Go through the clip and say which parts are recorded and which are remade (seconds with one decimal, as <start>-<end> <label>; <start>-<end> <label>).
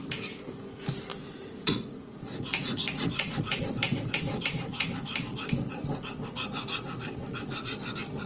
0.0-1.1 recorded; 1.1-3.6 remade; 3.6-8.3 recorded